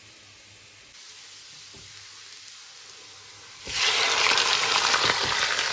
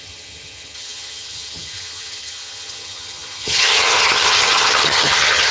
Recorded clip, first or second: first